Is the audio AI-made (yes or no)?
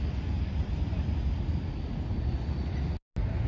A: no